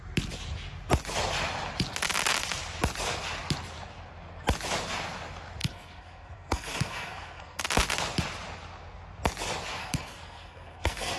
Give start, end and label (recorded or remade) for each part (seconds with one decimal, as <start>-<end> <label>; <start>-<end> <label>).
0.0-5.6 recorded; 5.6-7.6 remade; 7.6-9.8 recorded; 9.8-11.2 remade